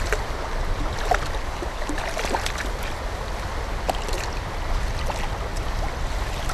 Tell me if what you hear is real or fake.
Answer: real